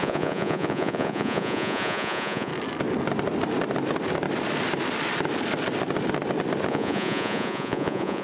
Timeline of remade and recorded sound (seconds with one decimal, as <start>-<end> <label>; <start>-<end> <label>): 0.0-2.5 remade; 2.5-6.7 recorded; 6.7-8.2 remade